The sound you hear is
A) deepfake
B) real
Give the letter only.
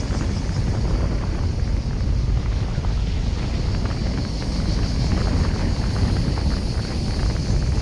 B